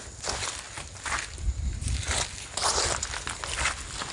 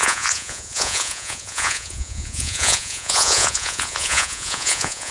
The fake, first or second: second